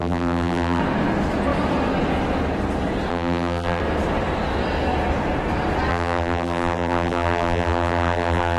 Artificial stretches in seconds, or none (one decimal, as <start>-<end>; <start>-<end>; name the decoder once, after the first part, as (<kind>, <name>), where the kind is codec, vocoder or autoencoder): 0.0-0.8 (vocoder, BigVGAN v2); 3.1-3.8; 5.9-8.6